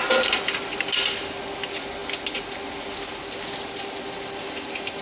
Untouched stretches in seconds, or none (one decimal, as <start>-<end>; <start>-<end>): 0.0-5.0